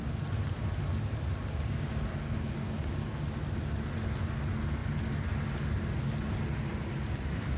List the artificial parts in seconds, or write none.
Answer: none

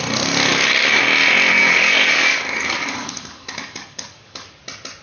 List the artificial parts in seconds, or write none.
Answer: 0.5-1.0 (codec, DAC); 1.6-4.6